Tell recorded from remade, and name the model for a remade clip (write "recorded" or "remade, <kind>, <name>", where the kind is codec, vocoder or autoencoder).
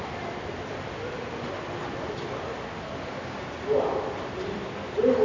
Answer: recorded